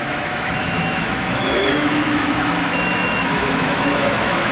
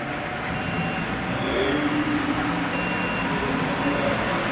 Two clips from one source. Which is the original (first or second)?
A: second